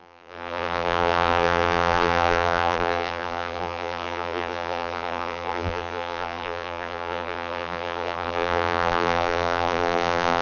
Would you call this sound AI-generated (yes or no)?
yes